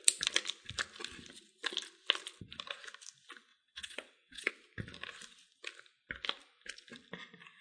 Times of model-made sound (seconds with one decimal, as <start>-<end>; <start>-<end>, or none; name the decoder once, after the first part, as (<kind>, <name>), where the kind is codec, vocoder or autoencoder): 3.5-4.5 (vocoder, WaveNeXt)